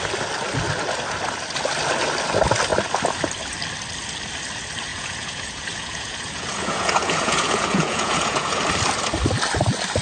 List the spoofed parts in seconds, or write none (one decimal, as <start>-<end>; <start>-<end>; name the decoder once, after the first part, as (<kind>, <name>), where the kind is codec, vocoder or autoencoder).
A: 4.9-8.6 (vocoder, Vocos)